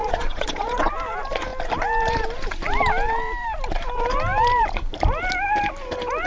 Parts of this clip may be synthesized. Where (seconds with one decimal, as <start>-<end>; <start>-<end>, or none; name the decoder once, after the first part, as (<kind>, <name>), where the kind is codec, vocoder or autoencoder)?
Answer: 0.0-0.9 (vocoder, Vocos)